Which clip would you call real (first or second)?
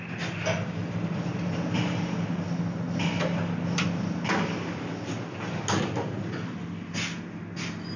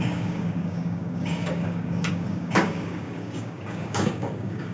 first